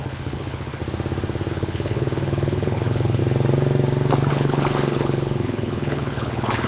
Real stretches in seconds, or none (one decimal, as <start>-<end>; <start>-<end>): 0.8-1.5; 3.2-4.3